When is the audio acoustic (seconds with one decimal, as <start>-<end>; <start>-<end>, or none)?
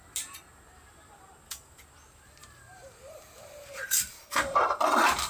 0.0-2.4; 4.1-5.3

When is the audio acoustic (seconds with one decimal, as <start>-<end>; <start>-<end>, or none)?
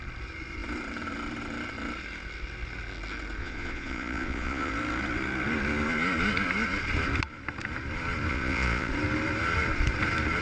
0.0-3.4; 4.7-8.3; 8.9-10.4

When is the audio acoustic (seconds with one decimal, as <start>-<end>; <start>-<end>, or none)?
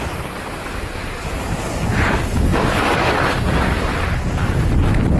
0.0-5.2